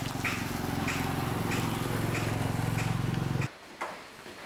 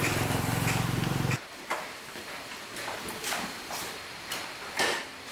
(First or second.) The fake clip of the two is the second